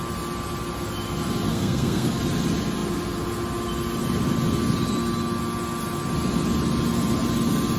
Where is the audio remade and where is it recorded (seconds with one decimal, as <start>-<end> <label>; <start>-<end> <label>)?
0.0-1.5 recorded; 1.5-2.2 remade; 2.2-7.8 recorded